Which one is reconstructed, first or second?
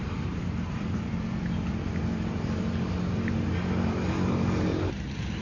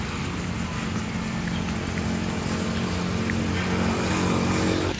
first